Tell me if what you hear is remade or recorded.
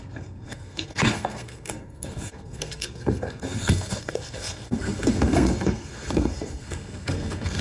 remade